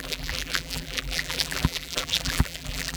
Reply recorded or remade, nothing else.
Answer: remade